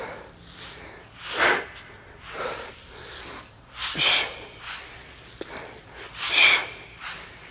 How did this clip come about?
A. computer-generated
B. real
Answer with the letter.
B